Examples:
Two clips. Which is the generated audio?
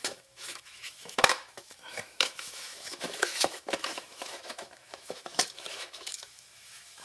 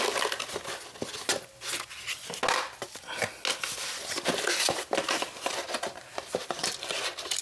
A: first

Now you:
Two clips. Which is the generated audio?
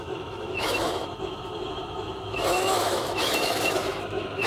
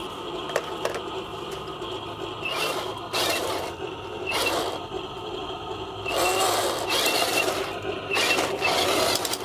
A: first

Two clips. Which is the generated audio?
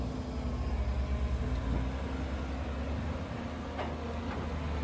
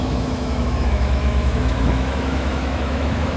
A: second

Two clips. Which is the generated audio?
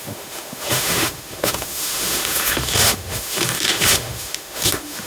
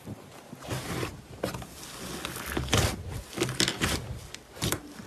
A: first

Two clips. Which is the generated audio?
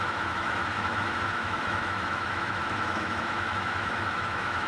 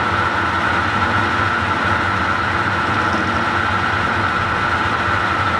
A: first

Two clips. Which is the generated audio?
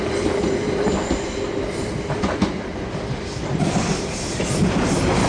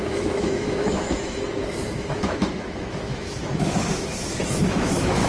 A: second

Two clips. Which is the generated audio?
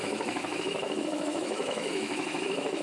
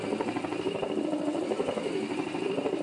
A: first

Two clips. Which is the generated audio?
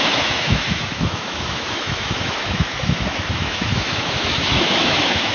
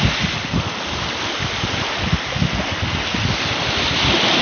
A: first